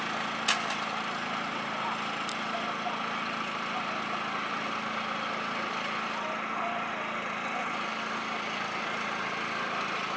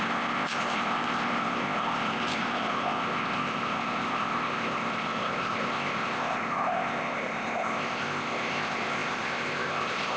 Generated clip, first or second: second